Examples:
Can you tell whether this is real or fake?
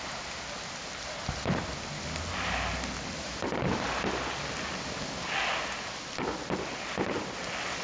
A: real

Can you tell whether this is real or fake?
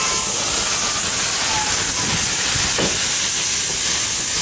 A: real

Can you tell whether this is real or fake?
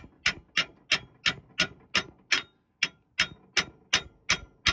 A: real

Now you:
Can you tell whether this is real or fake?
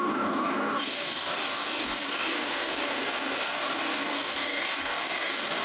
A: fake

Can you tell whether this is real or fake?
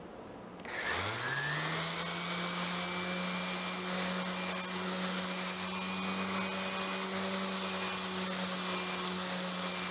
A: real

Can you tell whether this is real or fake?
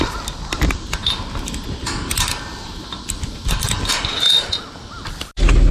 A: real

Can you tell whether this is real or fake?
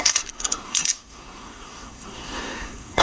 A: fake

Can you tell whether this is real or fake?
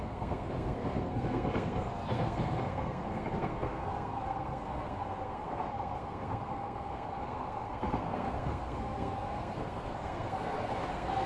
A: fake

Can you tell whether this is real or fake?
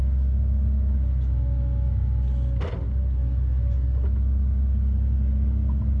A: real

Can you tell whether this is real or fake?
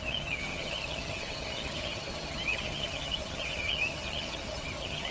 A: fake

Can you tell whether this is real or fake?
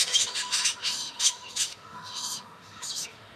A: fake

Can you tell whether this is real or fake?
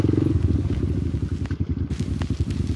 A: real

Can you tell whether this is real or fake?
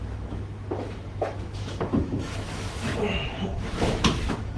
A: fake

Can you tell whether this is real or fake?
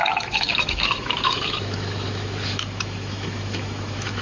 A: fake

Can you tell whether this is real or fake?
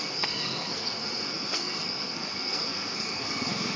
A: fake